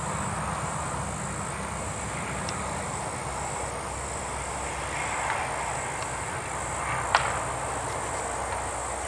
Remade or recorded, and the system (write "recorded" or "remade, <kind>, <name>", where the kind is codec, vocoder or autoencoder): recorded